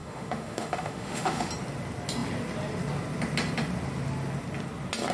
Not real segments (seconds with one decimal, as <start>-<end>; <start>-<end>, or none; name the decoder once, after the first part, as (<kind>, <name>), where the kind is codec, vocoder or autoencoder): 0.0-1.5 (autoencoder, DAC-VAE)